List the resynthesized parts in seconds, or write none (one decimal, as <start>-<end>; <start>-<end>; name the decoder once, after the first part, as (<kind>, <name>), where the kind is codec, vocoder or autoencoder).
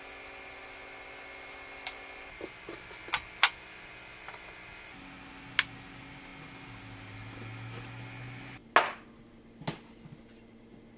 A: none